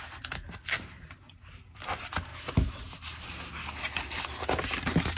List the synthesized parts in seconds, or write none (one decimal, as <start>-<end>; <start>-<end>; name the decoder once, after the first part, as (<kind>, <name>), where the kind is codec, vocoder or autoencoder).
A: none